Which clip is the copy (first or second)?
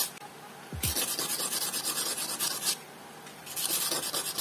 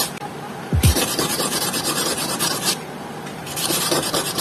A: second